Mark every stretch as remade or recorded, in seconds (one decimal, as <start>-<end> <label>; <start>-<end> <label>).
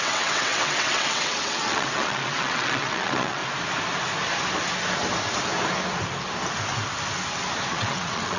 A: 0.0-3.4 remade; 3.4-7.7 recorded; 7.7-8.4 remade